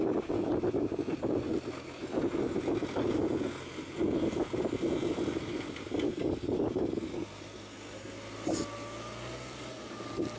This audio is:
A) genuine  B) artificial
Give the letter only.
A